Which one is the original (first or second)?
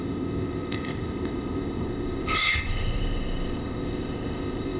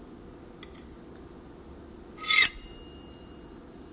second